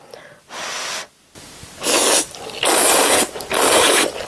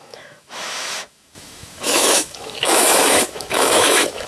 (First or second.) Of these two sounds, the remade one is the second